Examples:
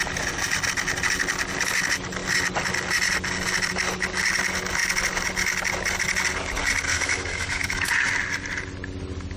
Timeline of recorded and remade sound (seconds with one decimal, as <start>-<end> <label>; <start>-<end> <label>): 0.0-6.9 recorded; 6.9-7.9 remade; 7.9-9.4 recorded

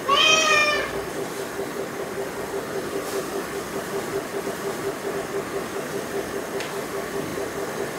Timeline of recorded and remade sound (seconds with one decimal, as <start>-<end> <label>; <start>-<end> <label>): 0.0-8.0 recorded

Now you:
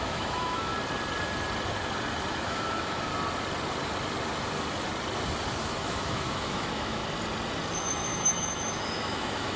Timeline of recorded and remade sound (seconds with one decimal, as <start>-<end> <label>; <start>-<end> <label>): 0.0-0.7 remade; 0.7-2.3 recorded; 2.3-3.1 remade; 3.1-5.6 recorded; 5.6-7.0 remade; 7.0-7.8 recorded; 7.8-9.6 remade

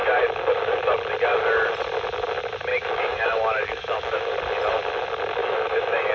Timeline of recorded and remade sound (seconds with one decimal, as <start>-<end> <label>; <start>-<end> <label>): 0.0-2.7 recorded; 2.7-4.3 remade; 4.3-5.4 recorded; 5.4-6.1 remade

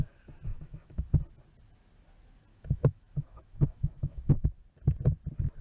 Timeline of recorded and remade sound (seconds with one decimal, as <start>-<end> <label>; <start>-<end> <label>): 0.0-0.5 recorded; 0.5-1.1 remade; 1.1-2.5 recorded; 2.5-4.5 remade; 4.5-5.6 recorded

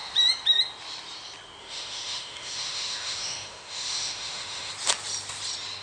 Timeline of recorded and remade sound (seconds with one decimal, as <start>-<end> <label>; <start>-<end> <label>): 0.0-1.6 recorded; 1.6-4.7 remade; 4.7-5.8 recorded